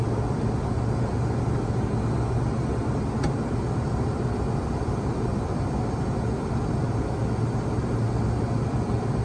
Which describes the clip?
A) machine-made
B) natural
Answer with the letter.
B